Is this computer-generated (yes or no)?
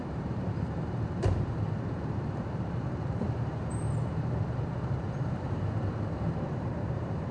yes